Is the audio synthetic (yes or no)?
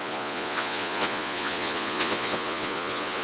yes